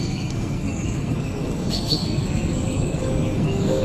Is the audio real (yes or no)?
no